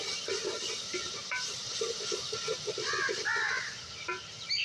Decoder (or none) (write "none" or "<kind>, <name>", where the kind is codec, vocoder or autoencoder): vocoder, BigVGAN v2